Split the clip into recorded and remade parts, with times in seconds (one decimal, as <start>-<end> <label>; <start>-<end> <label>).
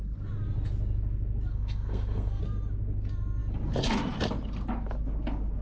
0.0-1.5 recorded; 1.5-2.4 remade; 2.4-5.6 recorded